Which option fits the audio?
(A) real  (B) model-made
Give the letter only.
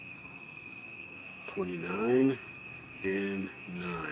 B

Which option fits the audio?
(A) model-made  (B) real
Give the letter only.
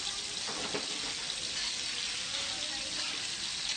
B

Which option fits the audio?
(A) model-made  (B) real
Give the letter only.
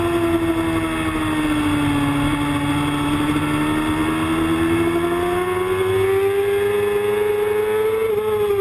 B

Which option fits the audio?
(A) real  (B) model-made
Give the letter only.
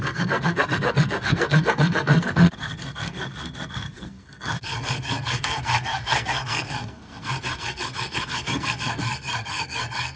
B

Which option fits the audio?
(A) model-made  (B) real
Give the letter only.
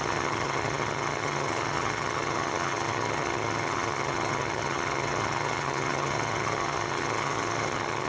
A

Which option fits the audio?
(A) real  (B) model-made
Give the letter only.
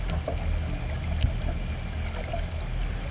A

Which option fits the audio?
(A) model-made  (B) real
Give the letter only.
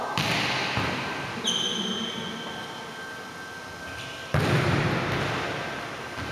B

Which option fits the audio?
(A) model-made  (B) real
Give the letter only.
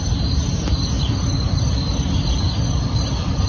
B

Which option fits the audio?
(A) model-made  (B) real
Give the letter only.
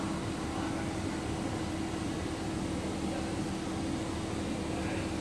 B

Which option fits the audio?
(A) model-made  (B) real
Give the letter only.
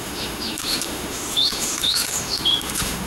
A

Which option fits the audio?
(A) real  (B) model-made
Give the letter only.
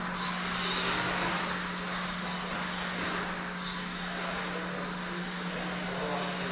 A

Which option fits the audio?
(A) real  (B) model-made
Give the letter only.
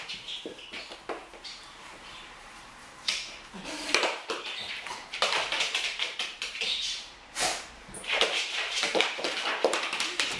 B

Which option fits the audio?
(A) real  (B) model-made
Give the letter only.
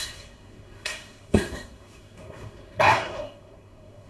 B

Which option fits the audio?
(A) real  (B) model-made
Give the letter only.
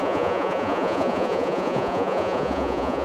B